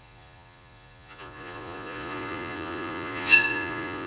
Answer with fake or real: fake